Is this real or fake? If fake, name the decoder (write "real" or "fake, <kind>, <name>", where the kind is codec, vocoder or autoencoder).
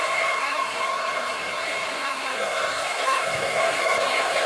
fake, codec, SNAC